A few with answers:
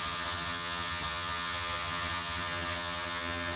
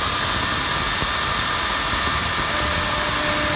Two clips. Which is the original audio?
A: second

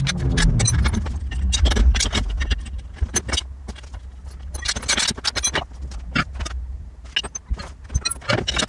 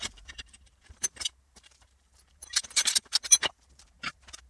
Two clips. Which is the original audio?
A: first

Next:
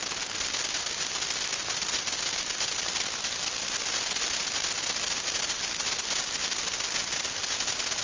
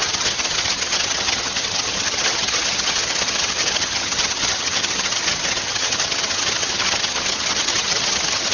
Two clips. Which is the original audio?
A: first